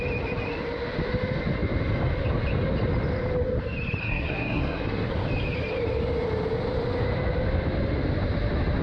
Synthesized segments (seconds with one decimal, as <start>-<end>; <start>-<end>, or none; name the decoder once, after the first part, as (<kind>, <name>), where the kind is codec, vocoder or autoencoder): 4.0-5.1 (codec, SNAC)